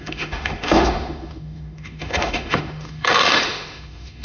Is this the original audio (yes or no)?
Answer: no